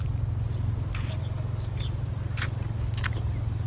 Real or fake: real